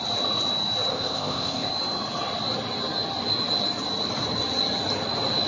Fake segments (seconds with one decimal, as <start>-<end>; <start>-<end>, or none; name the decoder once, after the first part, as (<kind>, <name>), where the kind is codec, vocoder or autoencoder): 0.9-1.7 (codec, ZipCodec)